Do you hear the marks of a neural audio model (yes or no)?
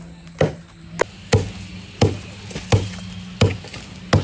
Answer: no